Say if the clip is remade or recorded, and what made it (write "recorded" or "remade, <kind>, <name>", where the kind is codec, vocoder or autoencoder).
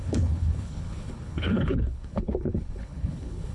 remade, codec, HILCodec